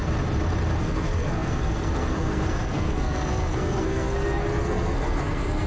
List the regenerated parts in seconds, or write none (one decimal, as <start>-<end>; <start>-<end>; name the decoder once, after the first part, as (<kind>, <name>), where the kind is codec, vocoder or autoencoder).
0.8-5.7 (codec, SNAC)